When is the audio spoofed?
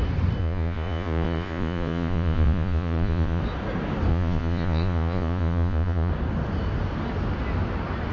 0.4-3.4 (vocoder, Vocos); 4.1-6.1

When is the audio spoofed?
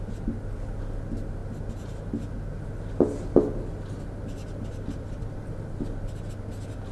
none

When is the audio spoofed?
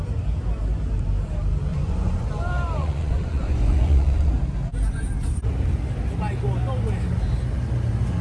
1.7-2.3 (vocoder, Vocos); 2.8-4.3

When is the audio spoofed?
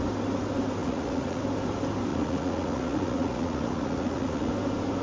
0.8-1.4 (vocoder, Vocos); 2.1-4.5